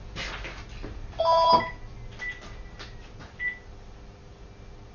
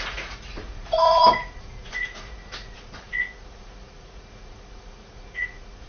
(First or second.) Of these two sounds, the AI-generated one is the second